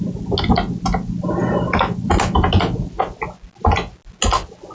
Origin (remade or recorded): recorded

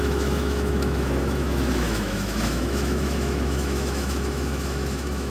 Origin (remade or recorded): remade